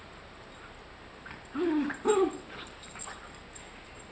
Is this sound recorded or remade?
recorded